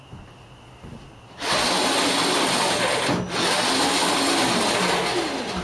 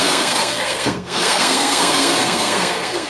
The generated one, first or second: second